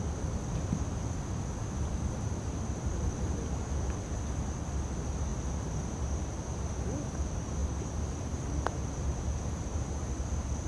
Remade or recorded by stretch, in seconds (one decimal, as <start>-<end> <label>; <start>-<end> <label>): 0.0-10.7 remade